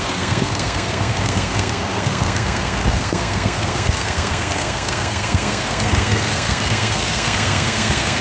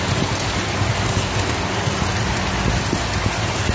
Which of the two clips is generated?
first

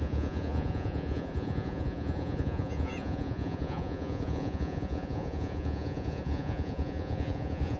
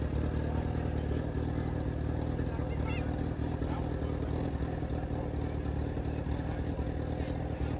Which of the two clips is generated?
first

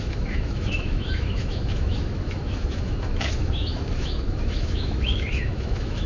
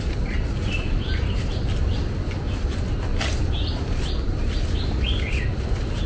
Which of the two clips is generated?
first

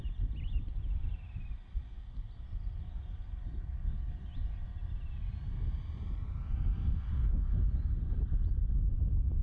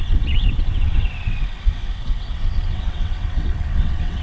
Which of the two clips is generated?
second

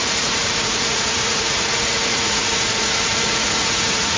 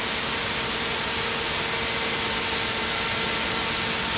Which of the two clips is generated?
first